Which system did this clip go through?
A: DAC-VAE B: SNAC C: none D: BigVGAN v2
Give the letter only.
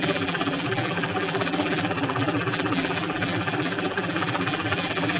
D